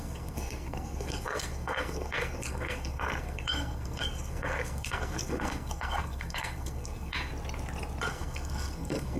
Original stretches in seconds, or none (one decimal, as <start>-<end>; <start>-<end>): 7.3-8.1